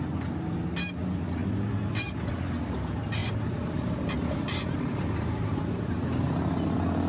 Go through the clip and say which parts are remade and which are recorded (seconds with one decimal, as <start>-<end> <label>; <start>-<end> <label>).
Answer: 0.0-3.2 recorded; 3.2-6.2 remade; 6.2-7.1 recorded